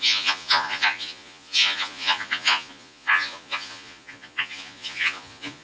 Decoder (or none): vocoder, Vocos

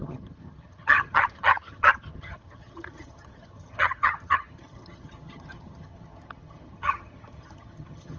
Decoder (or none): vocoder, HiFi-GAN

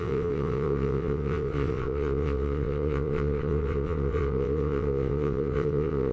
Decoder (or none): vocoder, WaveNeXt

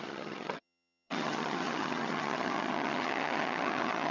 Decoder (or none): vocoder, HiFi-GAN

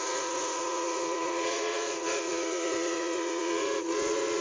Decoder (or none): vocoder, Vocos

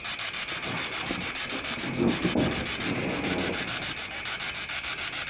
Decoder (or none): none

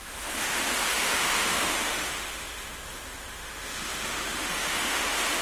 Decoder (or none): autoencoder, DAC-VAE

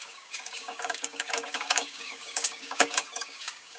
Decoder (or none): codec, DAC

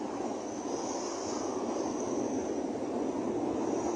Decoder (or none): none